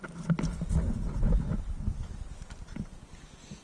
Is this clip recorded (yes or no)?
yes